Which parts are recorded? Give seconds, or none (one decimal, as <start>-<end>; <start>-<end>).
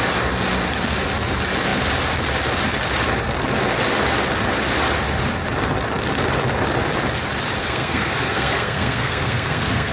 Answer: 0.0-7.6